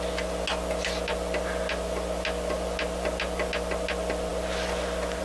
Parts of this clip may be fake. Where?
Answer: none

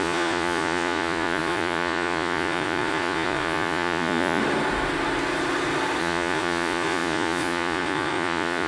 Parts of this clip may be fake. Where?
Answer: 0.0-4.4 (vocoder, Vocos); 6.0-8.7